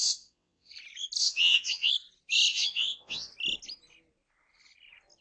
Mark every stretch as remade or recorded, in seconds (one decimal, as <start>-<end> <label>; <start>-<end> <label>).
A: 0.0-0.7 remade; 0.7-1.2 recorded; 1.2-1.9 remade; 1.9-2.5 recorded; 2.5-3.3 remade; 3.3-5.2 recorded